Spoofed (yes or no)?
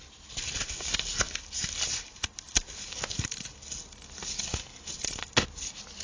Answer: no